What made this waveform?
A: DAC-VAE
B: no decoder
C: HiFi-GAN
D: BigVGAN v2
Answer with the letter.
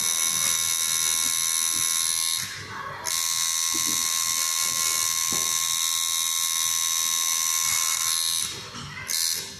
B